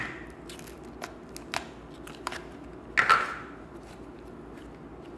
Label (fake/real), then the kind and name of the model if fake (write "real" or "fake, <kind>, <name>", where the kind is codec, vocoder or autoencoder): real